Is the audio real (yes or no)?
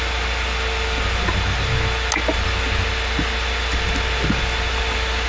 yes